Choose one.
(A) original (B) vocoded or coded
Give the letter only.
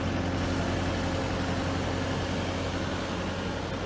A